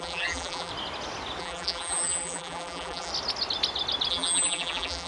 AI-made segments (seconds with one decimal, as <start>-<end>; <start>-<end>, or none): 0.0-0.7; 1.4-3.1; 4.1-5.1